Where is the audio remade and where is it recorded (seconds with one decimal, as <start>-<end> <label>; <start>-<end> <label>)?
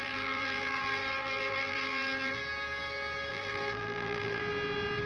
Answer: 0.0-2.4 remade; 2.4-3.3 recorded; 3.3-4.4 remade; 4.4-5.1 recorded